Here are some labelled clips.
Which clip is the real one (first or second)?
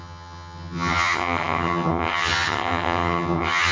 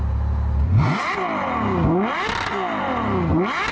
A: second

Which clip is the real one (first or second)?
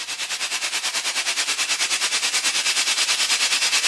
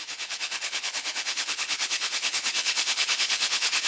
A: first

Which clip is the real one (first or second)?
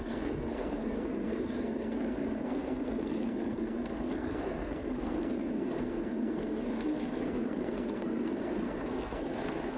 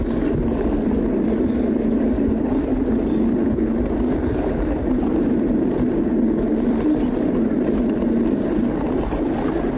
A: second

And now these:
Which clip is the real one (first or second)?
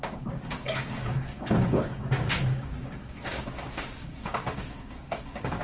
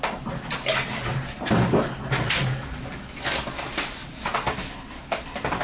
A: second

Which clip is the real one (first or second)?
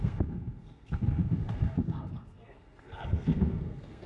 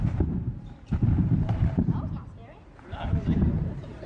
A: second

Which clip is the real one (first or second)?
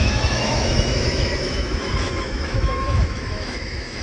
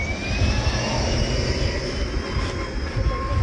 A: second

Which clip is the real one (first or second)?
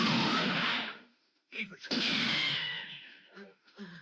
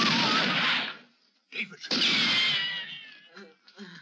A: second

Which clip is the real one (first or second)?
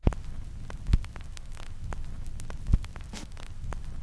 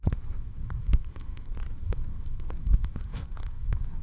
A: first